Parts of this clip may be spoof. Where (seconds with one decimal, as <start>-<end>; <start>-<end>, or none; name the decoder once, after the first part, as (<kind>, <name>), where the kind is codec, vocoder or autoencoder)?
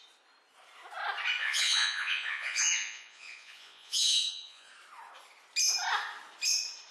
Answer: 1.4-4.7 (vocoder, Vocos)